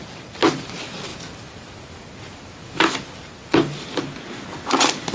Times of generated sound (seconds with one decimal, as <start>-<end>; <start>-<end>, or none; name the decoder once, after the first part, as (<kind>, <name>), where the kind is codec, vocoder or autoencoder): none